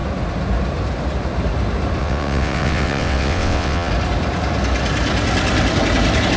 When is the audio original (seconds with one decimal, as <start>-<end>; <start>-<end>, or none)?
0.0-2.0; 3.9-6.4